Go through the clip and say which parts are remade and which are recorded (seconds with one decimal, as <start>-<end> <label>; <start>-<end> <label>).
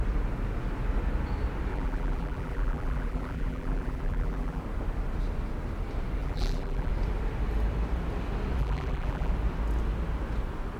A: 0.0-1.7 recorded; 1.7-4.6 remade; 4.6-6.2 recorded; 6.2-6.9 remade; 6.9-8.6 recorded; 8.6-9.3 remade; 9.3-10.8 recorded